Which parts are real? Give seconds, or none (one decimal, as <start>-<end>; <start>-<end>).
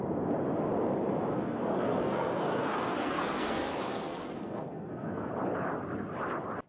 0.0-1.3; 5.3-6.7